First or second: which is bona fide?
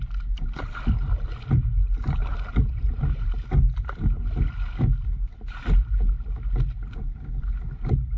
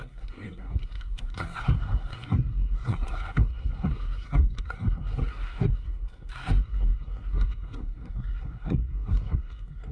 first